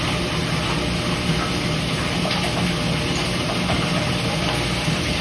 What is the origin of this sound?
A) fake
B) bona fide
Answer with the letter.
B